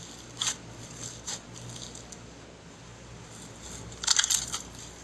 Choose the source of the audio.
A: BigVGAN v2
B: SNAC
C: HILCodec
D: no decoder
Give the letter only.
D